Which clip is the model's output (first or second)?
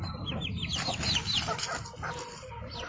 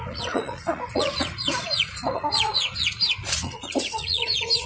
second